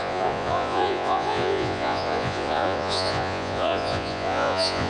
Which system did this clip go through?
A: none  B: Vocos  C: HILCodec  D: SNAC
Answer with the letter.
B